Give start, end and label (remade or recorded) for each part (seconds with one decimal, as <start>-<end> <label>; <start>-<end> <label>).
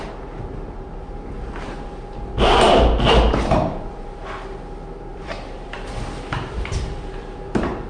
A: 0.0-5.1 recorded; 5.1-7.9 remade